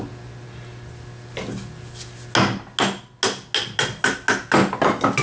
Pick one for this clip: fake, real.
real